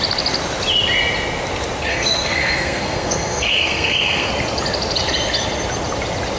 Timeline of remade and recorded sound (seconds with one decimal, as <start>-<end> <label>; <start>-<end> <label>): 0.0-1.9 recorded; 1.9-4.3 remade; 4.3-6.4 recorded